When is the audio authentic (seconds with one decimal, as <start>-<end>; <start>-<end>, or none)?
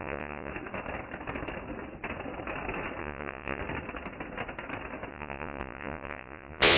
0.5-3.0; 3.6-5.1